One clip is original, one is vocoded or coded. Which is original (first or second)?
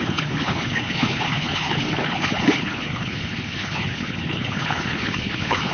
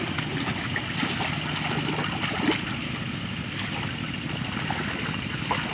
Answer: second